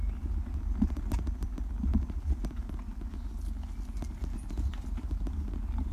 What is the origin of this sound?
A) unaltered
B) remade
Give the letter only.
A